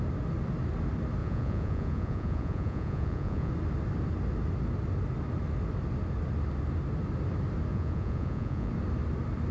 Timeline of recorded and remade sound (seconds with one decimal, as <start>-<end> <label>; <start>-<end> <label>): 0.0-1.2 recorded; 1.2-3.5 remade; 3.5-7.7 recorded; 7.7-8.7 remade; 8.7-9.5 recorded